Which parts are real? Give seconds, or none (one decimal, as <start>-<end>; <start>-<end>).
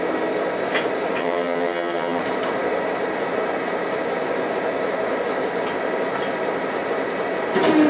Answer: 0.0-1.2; 2.2-7.9